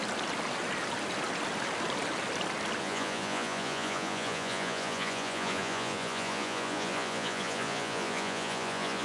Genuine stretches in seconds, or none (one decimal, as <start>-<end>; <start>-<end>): 0.0-2.8